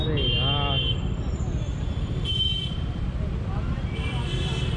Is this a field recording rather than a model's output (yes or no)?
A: no